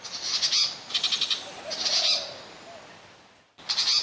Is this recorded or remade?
recorded